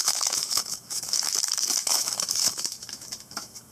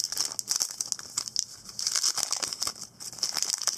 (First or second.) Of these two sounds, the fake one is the first